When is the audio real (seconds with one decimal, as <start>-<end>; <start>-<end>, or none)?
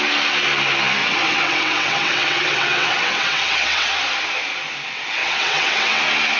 0.0-1.0; 3.9-5.2; 6.0-6.4